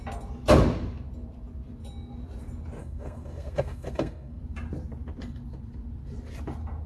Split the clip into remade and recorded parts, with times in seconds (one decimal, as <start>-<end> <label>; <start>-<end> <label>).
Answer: 0.0-2.8 recorded; 2.8-4.4 remade; 4.4-6.9 recorded